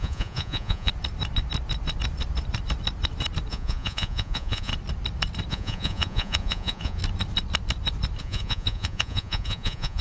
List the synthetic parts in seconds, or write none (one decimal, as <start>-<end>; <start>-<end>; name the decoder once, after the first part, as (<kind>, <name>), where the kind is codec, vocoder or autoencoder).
0.0-0.9 (vocoder, Vocos); 3.5-4.7; 5.5-7.0; 8.2-10.0